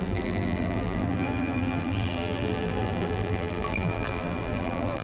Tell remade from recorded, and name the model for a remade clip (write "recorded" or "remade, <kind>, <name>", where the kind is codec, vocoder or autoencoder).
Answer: remade, vocoder, BigVGAN v2